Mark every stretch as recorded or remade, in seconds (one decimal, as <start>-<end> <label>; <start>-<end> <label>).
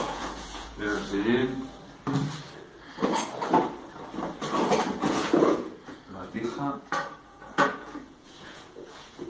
0.0-1.4 remade; 1.4-5.0 recorded; 5.0-9.3 remade